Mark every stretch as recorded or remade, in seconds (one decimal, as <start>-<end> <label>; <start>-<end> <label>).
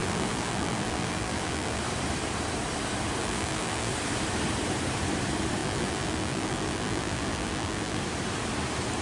0.0-1.8 remade; 1.8-3.2 recorded; 3.2-3.9 remade; 3.9-5.6 recorded; 5.6-8.0 remade; 8.0-9.0 recorded